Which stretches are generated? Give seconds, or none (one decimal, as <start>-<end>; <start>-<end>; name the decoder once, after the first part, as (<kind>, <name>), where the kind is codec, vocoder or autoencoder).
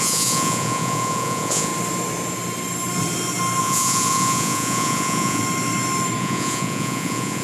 0.0-1.7 (vocoder, Vocos); 3.6-5.4; 6.2-7.4